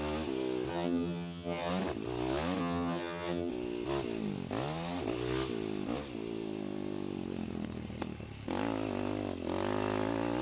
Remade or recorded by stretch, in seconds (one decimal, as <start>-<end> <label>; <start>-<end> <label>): 0.0-0.7 recorded; 0.7-1.7 remade; 1.7-2.6 recorded; 2.6-3.5 remade; 3.5-10.4 recorded